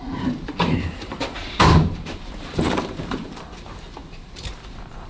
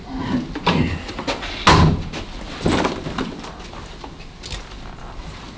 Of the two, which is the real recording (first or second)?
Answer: second